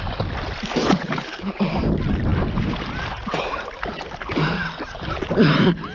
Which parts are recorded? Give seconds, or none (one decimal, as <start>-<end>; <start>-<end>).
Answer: 0.0-0.8; 1.6-5.9